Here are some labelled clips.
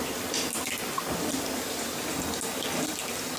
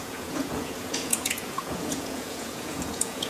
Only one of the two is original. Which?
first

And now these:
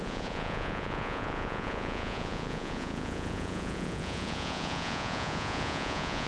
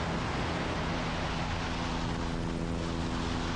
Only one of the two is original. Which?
second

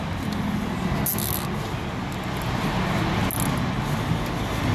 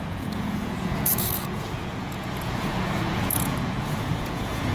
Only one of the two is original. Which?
first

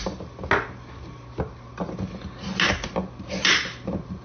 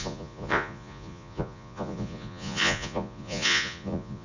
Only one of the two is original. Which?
first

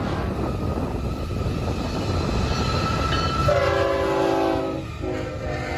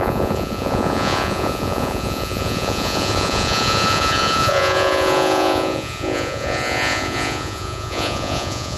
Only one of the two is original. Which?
first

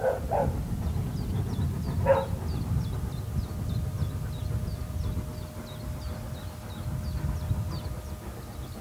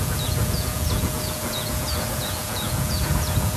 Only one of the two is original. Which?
first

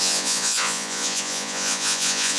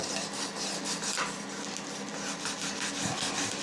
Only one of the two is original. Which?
second